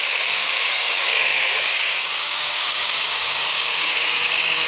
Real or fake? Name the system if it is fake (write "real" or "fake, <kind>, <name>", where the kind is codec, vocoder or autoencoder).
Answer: fake, codec, DAC